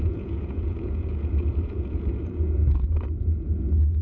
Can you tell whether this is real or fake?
fake